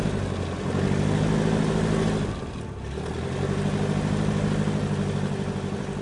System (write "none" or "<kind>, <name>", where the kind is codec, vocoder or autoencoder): none